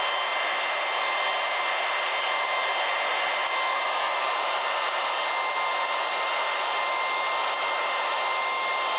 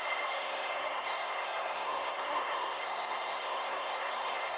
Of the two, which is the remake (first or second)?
second